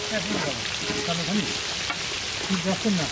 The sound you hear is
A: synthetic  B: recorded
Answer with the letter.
B